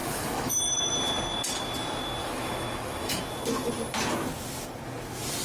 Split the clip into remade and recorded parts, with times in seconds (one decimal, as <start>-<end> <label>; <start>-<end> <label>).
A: 0.0-0.9 remade; 0.9-2.2 recorded; 2.2-3.2 remade; 3.2-5.4 recorded